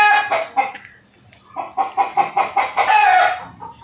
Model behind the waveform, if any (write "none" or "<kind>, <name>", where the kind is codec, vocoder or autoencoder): none